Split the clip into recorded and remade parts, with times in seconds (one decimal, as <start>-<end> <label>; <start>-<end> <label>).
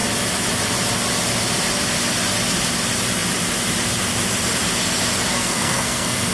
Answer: 0.0-5.3 recorded; 5.3-6.3 remade